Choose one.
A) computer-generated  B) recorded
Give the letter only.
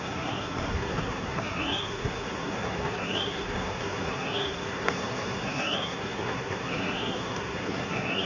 A